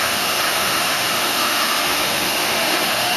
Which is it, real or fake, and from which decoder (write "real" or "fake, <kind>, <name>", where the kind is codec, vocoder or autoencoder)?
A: fake, autoencoder, DAC-VAE